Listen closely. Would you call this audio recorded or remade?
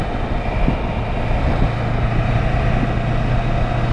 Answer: recorded